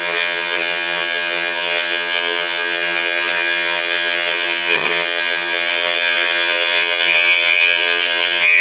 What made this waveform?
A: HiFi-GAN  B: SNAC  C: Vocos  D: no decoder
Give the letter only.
A